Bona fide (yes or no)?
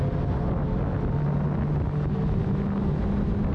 yes